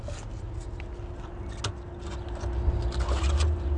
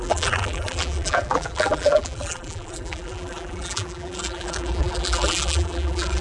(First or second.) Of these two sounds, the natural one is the first